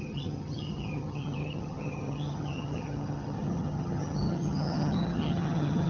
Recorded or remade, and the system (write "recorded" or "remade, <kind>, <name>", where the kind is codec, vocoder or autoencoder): remade, vocoder, HiFi-GAN